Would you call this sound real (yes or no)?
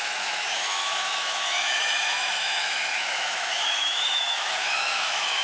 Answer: no